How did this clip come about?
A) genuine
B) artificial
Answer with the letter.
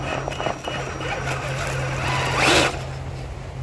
A